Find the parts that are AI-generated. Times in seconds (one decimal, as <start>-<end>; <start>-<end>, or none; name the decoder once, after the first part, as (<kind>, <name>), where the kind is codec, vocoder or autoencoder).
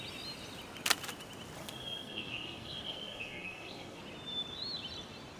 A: 1.6-4.0 (codec, SNAC)